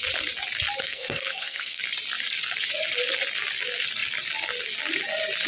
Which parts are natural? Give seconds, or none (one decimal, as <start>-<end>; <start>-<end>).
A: 0.0-0.8; 1.8-5.5